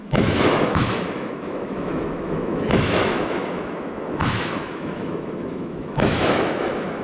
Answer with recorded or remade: remade